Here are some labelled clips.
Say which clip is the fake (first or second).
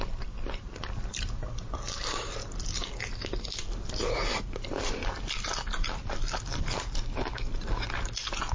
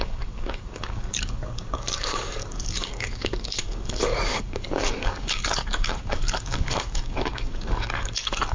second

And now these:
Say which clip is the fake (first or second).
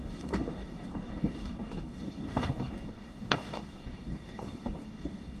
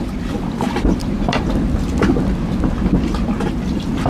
first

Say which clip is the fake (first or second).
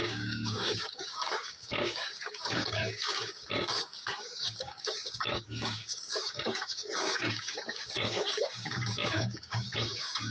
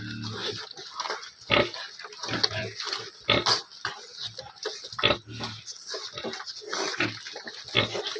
first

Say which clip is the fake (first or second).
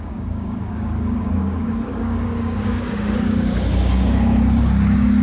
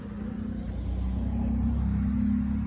first